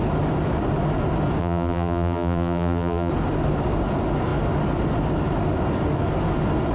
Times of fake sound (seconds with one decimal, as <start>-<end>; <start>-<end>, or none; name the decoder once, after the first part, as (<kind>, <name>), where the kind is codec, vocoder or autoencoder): 1.4-3.1 (vocoder, BigVGAN v2)